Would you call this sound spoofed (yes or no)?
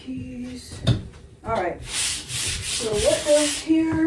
yes